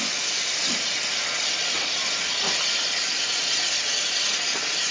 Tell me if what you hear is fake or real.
real